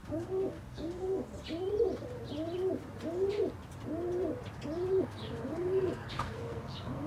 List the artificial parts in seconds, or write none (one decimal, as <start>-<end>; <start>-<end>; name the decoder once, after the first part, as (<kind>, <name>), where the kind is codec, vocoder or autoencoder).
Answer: 0.0-1.3 (codec, SNAC); 5.0-7.1